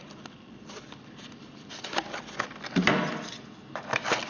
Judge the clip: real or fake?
real